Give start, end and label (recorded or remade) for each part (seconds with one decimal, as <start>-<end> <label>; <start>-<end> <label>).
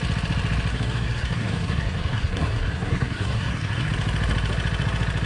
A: 0.0-0.7 recorded; 0.7-3.9 remade; 3.9-5.3 recorded